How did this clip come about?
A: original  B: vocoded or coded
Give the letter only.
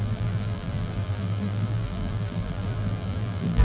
B